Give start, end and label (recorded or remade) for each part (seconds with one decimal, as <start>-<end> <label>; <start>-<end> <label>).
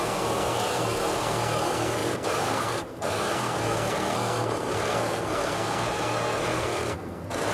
0.0-7.5 remade